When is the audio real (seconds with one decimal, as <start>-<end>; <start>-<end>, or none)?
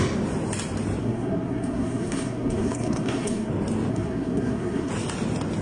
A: 0.0-1.0; 3.5-3.9; 4.9-5.6